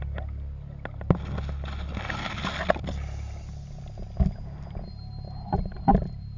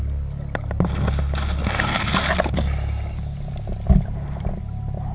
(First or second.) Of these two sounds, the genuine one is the second